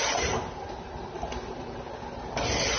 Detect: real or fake real